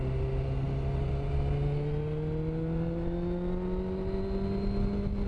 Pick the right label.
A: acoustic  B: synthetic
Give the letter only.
A